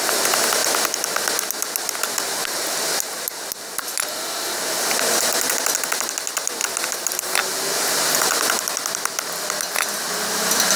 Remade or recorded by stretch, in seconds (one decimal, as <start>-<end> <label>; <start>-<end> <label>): 0.0-10.8 recorded